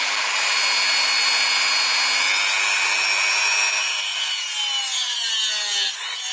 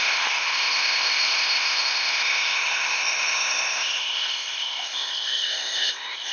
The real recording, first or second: first